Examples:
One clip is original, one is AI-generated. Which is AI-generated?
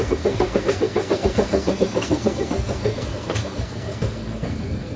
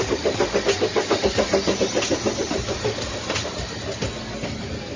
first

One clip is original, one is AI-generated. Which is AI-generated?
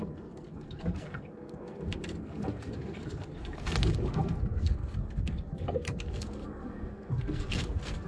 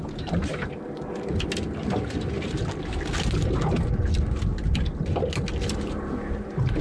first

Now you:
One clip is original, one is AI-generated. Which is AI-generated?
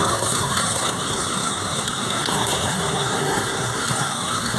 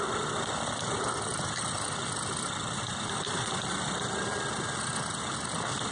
first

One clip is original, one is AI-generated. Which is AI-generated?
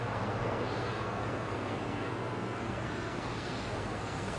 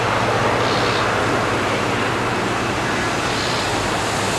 first